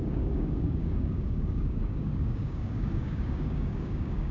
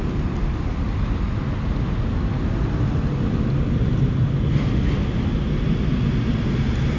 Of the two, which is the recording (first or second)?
second